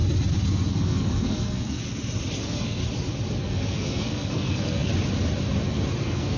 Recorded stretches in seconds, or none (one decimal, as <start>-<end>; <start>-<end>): 0.0-0.7; 1.8-2.4; 2.8-3.4; 4.9-6.0